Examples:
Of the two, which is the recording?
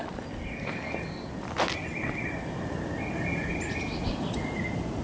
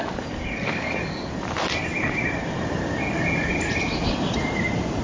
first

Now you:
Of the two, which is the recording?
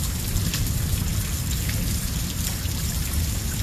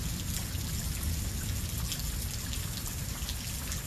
second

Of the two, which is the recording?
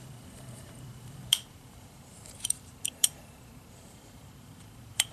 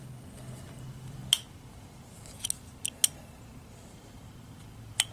second